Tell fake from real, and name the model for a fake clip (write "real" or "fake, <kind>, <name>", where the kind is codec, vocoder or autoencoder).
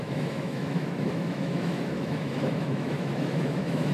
fake, autoencoder, DAC-VAE